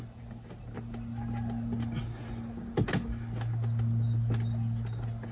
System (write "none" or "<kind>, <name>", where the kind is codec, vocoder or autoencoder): none